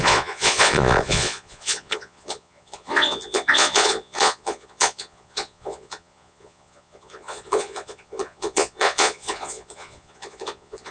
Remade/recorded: remade